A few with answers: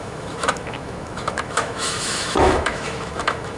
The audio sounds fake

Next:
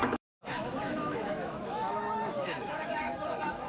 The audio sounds fake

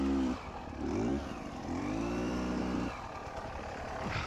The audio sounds fake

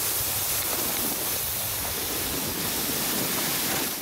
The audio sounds fake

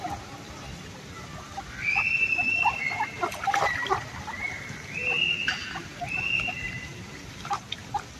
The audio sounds real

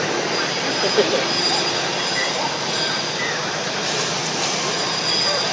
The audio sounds real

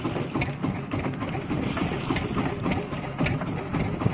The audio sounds real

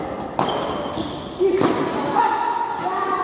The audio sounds real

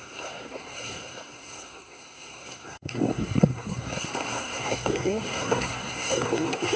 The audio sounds fake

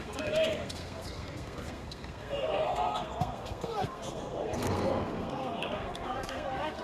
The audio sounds fake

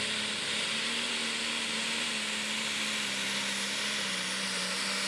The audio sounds real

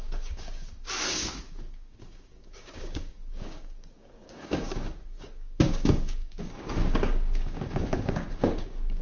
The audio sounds fake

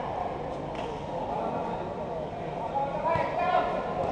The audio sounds real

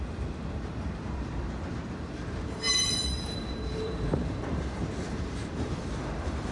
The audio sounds fake